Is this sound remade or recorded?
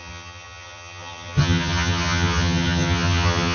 remade